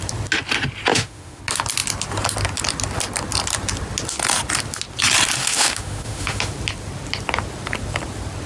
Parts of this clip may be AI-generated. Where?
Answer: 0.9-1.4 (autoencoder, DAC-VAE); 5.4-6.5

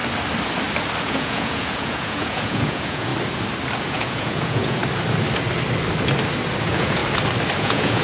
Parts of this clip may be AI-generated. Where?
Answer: 1.0-3.1 (vocoder, Vocos); 3.8-4.8; 6.6-7.0; 7.6-8.0